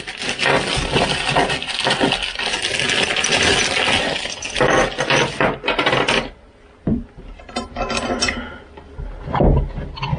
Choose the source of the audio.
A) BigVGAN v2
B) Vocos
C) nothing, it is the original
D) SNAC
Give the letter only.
C